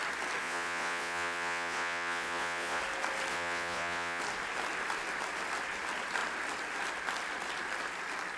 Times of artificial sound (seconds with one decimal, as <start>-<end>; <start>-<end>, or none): 0.4-2.8; 3.3-4.2